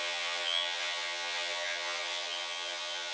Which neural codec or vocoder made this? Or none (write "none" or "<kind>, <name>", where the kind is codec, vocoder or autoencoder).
vocoder, HiFi-GAN